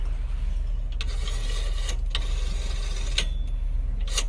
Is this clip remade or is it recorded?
recorded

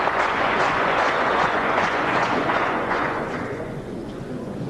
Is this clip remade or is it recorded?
remade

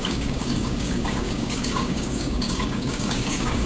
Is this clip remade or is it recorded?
remade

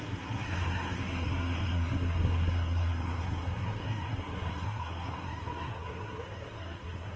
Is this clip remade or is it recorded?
remade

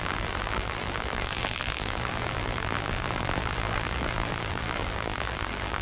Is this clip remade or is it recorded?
remade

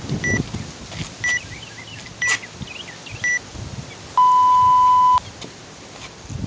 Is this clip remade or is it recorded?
recorded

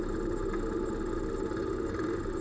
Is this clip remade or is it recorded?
recorded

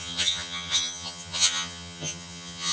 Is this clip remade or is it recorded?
remade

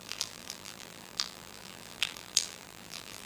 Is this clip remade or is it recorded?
remade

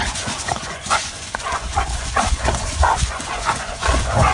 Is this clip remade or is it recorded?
remade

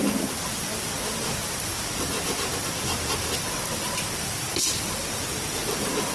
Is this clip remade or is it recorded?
recorded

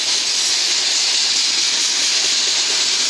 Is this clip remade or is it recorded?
recorded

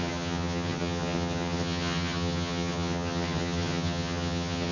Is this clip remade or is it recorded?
remade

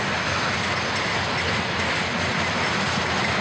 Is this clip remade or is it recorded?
recorded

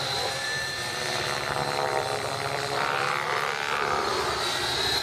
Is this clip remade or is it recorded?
remade